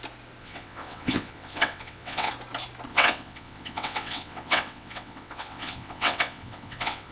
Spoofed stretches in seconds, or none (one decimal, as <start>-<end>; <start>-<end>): 0.4-2.3; 2.9-7.1